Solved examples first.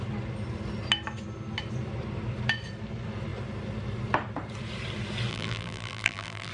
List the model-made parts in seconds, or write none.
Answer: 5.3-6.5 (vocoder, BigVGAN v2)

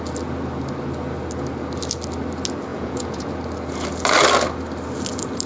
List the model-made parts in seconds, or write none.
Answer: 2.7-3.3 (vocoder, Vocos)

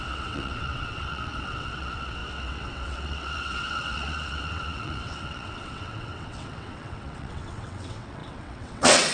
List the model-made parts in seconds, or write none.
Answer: 0.0-9.1 (vocoder, WaveNeXt)

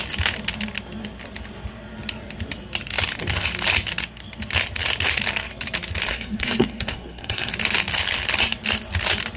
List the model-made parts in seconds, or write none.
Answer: 6.1-7.5 (codec, SNAC)

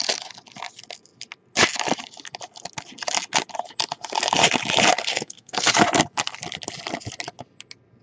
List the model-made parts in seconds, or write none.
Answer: 5.1-5.7 (codec, SNAC)